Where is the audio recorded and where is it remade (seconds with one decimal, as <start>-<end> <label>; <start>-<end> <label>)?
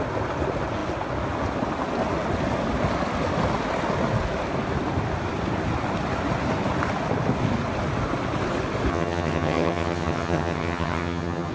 0.0-8.9 recorded; 8.9-11.5 remade